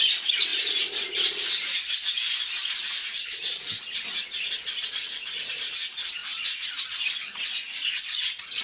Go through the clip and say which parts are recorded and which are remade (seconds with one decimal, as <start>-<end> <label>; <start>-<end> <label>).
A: 0.0-6.2 recorded; 6.2-7.4 remade; 7.4-8.6 recorded

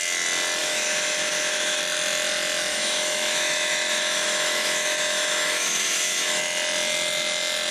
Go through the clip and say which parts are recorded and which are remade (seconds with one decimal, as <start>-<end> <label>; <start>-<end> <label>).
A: 0.0-0.6 recorded; 0.6-1.8 remade; 1.8-2.7 recorded; 2.7-6.4 remade; 6.4-7.7 recorded

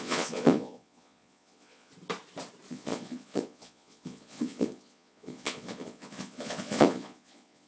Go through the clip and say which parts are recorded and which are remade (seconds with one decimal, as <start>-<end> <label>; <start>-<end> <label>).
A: 0.0-1.9 remade; 1.9-2.7 recorded; 2.7-7.7 remade

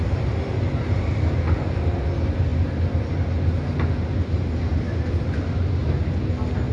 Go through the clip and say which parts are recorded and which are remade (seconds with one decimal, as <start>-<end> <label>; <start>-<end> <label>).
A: 0.0-6.7 recorded

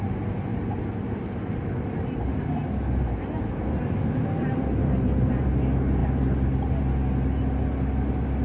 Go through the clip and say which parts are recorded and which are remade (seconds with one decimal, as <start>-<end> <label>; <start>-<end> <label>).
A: 0.0-0.5 recorded; 0.5-5.5 remade; 5.5-8.4 recorded